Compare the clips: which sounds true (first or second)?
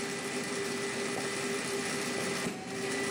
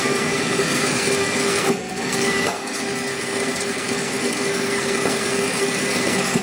first